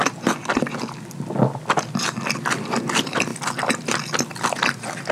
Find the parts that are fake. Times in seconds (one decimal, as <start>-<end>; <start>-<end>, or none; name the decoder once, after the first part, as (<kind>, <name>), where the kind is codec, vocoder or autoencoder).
none